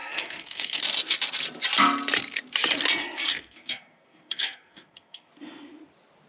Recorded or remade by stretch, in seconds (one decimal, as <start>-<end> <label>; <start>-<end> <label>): 0.0-0.8 remade; 0.8-3.3 recorded; 3.3-5.3 remade; 5.3-6.3 recorded